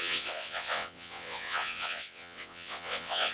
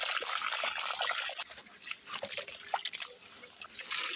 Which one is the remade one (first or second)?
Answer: first